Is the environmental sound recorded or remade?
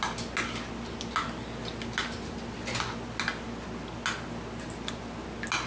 recorded